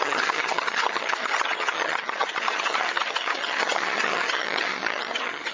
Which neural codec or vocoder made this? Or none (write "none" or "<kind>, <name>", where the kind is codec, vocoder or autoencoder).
vocoder, HiFi-GAN